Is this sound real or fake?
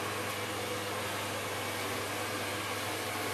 real